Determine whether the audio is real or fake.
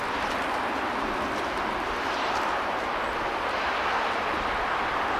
real